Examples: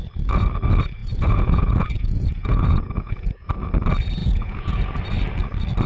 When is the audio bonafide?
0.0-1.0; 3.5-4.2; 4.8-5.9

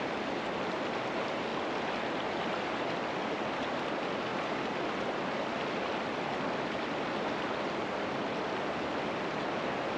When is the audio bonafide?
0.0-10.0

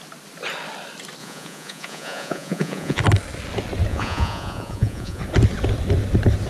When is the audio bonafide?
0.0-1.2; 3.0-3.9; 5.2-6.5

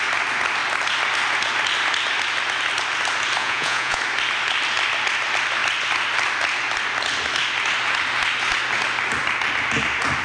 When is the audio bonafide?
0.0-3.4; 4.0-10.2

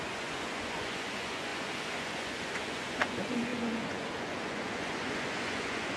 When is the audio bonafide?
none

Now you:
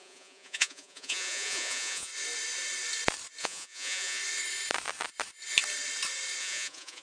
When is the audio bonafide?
2.1-3.4; 4.2-6.4

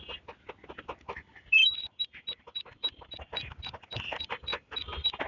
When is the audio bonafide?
0.0-5.3

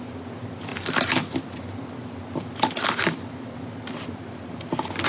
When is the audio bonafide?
0.0-5.1